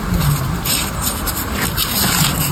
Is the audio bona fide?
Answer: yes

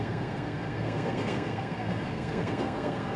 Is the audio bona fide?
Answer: no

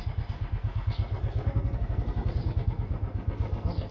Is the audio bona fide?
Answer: no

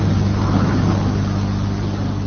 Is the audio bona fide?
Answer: yes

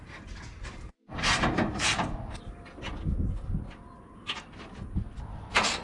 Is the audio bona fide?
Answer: yes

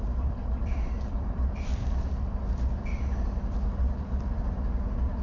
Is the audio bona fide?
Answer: no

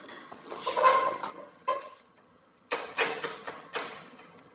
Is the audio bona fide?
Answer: no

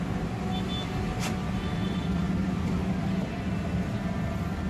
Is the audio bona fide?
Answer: yes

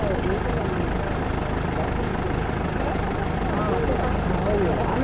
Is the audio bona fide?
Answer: yes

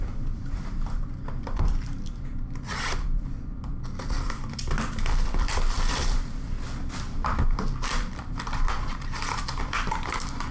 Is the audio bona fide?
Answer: no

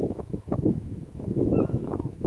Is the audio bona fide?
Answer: no